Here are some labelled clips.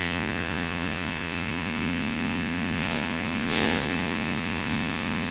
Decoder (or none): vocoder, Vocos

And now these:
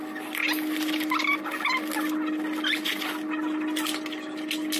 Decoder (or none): none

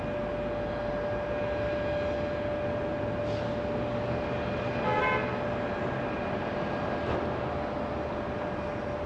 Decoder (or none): none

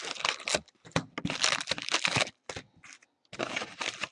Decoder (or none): none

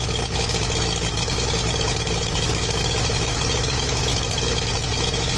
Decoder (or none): autoencoder, DAC-VAE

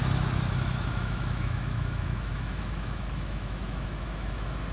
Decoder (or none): autoencoder, DAC-VAE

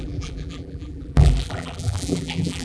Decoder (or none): vocoder, BigVGAN v2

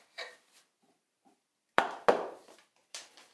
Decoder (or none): vocoder, BigVGAN v2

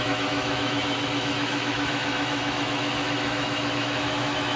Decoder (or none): autoencoder, DAC-VAE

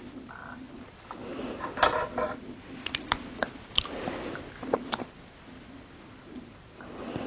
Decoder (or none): none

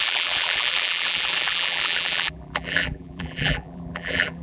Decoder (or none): vocoder, BigVGAN v2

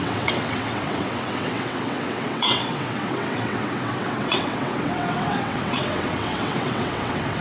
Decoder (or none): vocoder, WaveNeXt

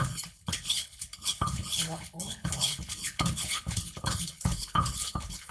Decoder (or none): codec, HILCodec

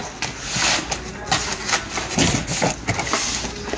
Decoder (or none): none